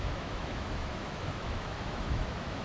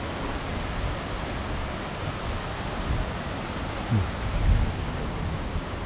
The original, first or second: second